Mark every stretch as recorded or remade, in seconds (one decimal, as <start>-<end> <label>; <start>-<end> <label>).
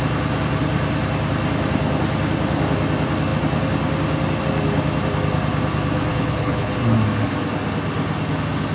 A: 0.0-6.1 recorded; 6.1-6.7 remade; 6.7-8.7 recorded